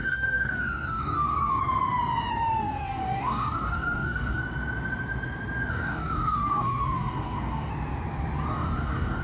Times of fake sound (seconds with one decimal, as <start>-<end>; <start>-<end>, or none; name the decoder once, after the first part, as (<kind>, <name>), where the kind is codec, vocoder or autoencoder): 0.0-1.6 (codec, DAC); 2.3-4.4; 5.7-7.7; 8.5-9.2